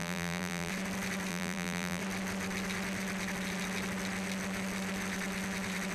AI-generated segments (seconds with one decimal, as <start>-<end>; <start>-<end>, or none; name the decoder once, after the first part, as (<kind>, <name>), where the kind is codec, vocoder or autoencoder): 0.0-0.7 (vocoder, BigVGAN v2); 1.3-2.0